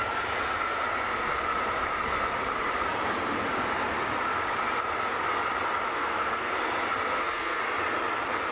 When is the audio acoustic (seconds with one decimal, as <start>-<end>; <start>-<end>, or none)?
0.0-5.9; 6.5-7.1; 7.6-8.5